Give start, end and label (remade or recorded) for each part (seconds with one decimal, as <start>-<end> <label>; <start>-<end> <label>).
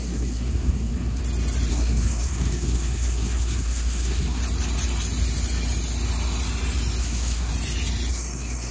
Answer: 0.0-1.2 remade; 1.2-1.7 recorded; 1.7-4.4 remade; 4.4-7.0 recorded; 7.0-7.5 remade; 7.5-8.1 recorded; 8.1-8.7 remade